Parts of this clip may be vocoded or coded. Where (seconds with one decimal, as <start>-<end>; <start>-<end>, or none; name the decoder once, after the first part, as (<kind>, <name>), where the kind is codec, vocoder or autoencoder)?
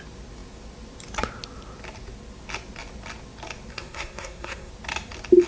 3.7-4.7 (codec, SNAC)